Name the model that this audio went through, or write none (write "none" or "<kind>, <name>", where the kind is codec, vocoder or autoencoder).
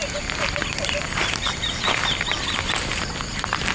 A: none